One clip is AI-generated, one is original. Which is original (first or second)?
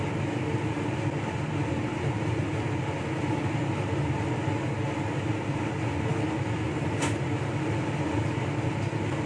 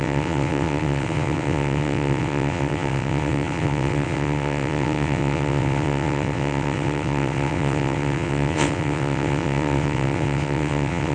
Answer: first